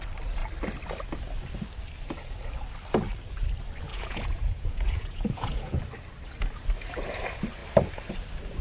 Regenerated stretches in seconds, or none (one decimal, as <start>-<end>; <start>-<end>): 3.9-5.8